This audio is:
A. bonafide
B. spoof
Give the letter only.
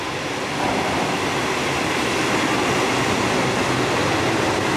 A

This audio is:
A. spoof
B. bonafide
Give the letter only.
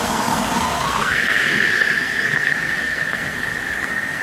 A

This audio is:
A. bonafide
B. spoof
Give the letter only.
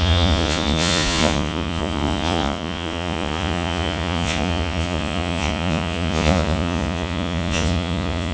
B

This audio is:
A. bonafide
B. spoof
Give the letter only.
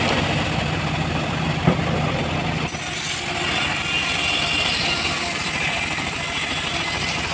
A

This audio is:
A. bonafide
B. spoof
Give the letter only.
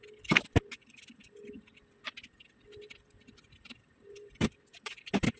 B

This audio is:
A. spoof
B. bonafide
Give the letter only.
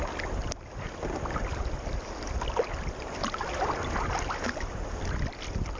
B